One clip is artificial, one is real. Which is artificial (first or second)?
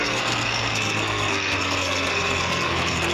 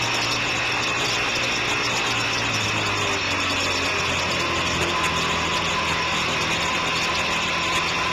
first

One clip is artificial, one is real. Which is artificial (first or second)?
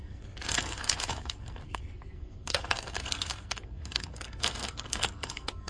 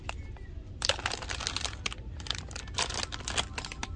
first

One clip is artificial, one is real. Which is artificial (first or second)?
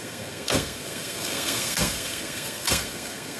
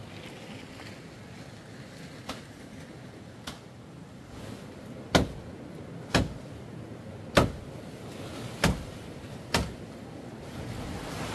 first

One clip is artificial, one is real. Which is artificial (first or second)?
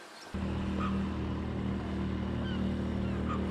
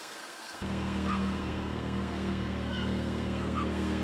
second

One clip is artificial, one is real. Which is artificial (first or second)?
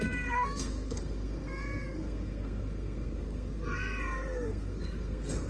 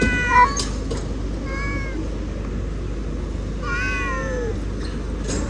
first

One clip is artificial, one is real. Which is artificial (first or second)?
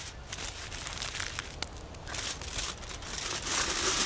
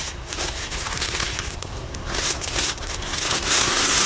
second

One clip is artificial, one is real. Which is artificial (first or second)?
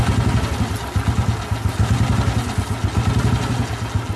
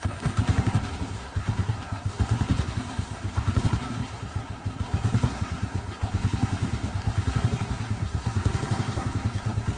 second